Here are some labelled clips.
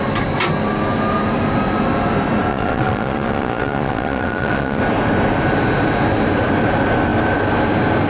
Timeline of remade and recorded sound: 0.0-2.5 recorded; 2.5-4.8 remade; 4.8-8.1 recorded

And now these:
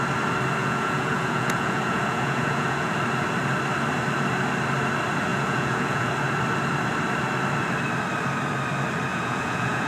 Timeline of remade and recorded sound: 0.0-0.6 recorded; 0.6-2.9 remade; 2.9-5.3 recorded; 5.3-6.1 remade; 6.1-9.1 recorded; 9.1-9.9 remade

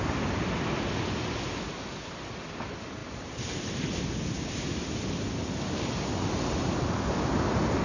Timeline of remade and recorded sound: 0.0-7.8 recorded

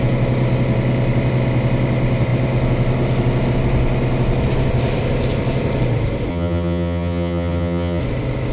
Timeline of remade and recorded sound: 0.0-6.3 recorded; 6.3-8.0 remade; 8.0-8.5 recorded

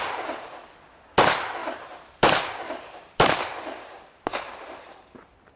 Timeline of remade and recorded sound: 0.0-1.6 recorded; 1.6-5.0 remade; 5.0-5.6 recorded